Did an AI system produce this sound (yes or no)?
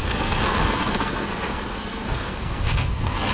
yes